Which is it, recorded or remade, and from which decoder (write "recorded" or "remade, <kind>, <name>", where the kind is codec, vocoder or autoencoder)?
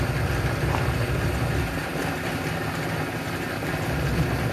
recorded